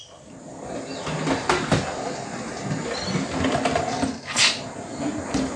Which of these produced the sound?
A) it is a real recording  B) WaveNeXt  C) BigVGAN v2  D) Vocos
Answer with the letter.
A